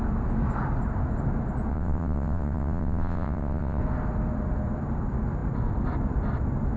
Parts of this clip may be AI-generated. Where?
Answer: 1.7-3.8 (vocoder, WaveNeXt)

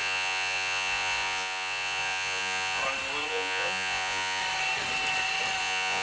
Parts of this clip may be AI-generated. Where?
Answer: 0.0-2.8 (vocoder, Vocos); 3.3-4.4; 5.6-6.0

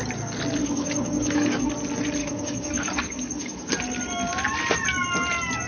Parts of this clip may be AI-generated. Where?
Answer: 0.6-1.7 (codec, DAC); 2.2-3.7

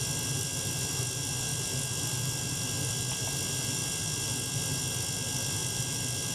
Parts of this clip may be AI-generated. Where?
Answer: none

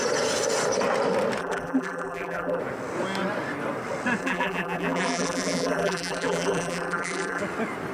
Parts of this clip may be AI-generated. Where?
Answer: 1.4-2.6 (vocoder, BigVGAN v2); 4.2-7.4

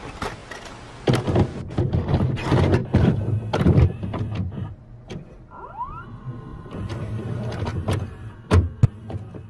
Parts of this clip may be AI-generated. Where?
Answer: 2.8-4.8 (vocoder, BigVGAN v2); 6.5-7.2

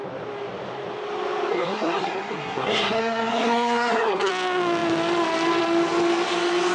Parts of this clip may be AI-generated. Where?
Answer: 1.5-4.3 (codec, SNAC)

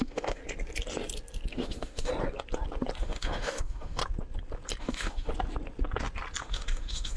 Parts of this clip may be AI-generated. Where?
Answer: 0.0-0.4 (autoencoder, DAC-VAE); 1.5-2.1; 3.0-4.0; 4.8-5.3; 6.4-7.2